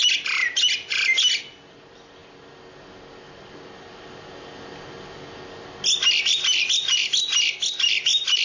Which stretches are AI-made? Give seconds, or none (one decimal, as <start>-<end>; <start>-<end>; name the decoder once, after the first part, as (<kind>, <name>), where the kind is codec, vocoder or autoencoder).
none